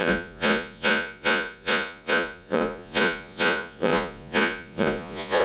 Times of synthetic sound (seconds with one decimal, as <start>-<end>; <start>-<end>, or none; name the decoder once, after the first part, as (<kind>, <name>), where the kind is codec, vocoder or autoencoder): 0.0-5.4 (vocoder, Vocos)